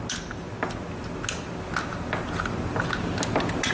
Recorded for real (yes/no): yes